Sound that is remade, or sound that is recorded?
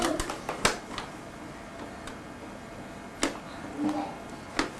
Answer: recorded